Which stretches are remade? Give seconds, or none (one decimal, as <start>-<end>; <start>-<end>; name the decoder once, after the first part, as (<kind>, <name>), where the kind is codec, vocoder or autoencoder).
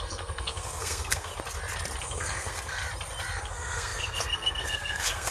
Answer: 0.0-1.3 (codec, SNAC); 2.0-2.8; 3.4-5.3